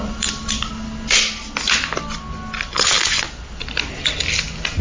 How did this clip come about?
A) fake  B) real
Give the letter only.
B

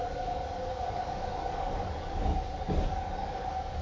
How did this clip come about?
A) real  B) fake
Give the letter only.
B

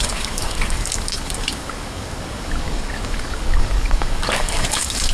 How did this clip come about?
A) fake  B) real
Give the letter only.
A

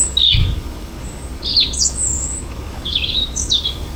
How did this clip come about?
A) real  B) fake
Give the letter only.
B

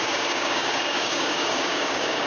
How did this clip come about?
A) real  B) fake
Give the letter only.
B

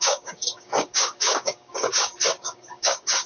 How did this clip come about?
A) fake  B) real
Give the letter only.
A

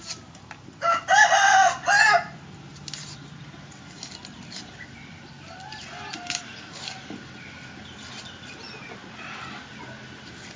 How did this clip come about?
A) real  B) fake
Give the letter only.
A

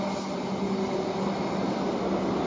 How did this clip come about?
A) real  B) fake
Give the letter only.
A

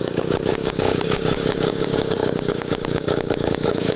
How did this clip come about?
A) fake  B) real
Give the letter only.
A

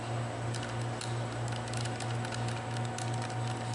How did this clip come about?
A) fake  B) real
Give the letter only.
B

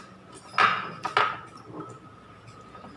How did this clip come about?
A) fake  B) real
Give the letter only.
B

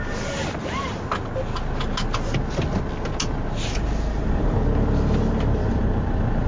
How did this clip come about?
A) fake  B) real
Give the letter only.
B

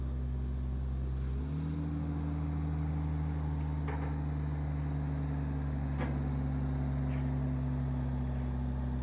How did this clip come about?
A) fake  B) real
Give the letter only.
B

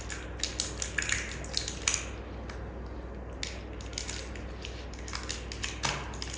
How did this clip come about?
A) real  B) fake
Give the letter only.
A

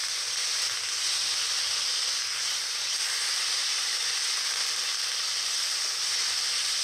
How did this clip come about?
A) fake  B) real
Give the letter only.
B